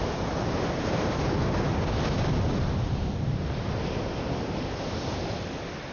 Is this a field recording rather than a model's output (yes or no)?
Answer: yes